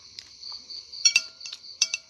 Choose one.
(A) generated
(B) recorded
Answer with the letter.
A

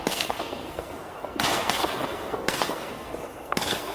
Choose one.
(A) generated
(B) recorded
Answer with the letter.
A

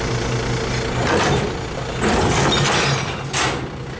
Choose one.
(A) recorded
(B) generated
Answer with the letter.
A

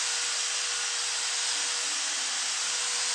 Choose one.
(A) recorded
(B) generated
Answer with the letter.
A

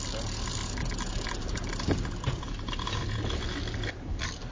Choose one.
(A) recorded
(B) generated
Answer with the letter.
A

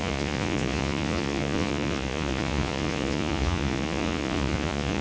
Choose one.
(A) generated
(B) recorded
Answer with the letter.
A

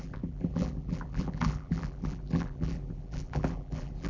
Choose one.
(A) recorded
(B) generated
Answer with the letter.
B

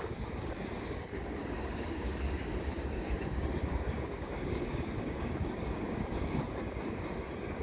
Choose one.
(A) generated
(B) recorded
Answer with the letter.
A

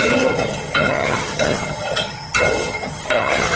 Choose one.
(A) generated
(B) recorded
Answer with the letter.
A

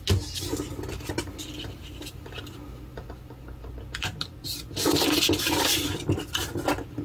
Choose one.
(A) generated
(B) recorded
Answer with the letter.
B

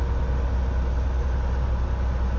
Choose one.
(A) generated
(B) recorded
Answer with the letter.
B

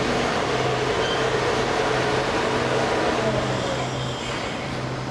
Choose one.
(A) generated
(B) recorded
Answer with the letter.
B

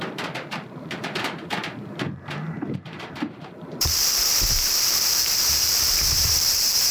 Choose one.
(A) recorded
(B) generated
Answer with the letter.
B